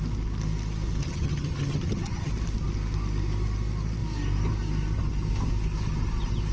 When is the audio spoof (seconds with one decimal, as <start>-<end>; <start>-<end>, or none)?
1.0-2.3